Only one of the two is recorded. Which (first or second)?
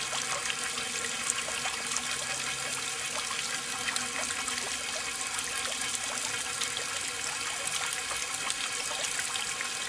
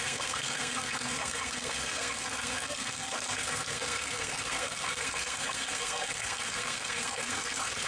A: first